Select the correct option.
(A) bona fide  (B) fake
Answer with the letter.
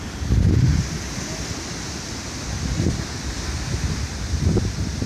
B